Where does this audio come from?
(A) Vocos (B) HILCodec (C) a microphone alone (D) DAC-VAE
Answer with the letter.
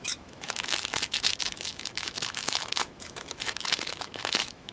D